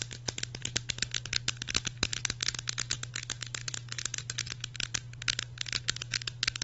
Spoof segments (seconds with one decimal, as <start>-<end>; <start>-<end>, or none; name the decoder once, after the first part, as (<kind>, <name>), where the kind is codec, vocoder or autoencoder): none